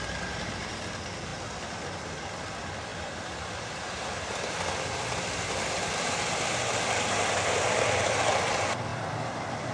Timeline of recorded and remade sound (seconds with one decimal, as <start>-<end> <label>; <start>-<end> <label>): 0.0-9.7 recorded